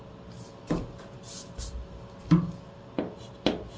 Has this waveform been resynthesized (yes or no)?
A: no